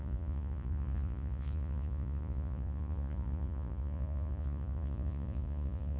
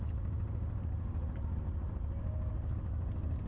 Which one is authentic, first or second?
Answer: second